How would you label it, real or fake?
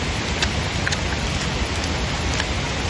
real